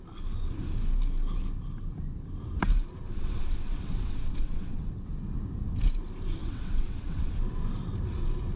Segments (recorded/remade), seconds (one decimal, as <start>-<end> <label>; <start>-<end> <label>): 0.0-3.0 recorded; 3.0-4.9 remade; 4.9-6.4 recorded; 6.4-7.3 remade; 7.3-8.6 recorded